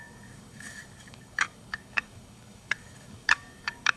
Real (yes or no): no